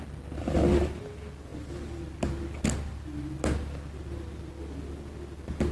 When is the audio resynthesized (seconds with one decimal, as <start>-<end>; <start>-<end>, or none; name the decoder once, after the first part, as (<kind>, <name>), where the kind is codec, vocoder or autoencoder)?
none